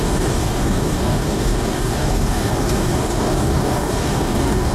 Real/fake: fake